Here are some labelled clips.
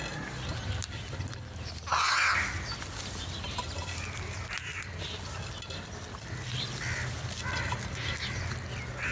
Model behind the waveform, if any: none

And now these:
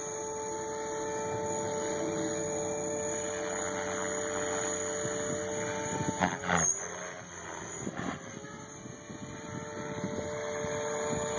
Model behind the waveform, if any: none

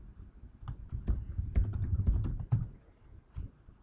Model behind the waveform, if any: none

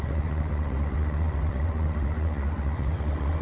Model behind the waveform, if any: vocoder, WaveNeXt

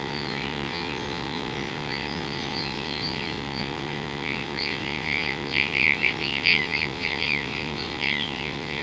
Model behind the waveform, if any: vocoder, WaveNeXt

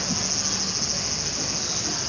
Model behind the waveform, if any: none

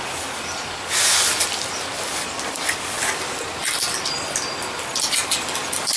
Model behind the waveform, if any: none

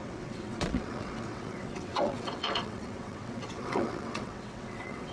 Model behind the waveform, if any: vocoder, WaveNeXt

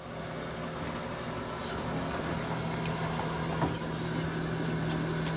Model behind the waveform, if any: none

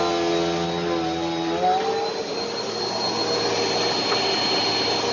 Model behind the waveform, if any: none